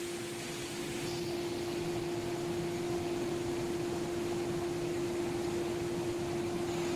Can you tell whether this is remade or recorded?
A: recorded